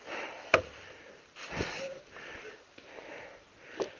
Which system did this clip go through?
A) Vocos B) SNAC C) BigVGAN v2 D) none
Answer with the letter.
D